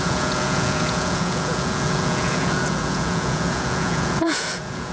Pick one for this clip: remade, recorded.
remade